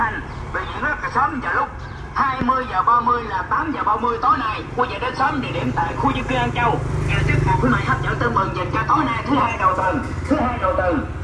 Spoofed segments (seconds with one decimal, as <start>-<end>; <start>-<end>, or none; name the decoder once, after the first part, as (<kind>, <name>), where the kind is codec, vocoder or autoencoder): none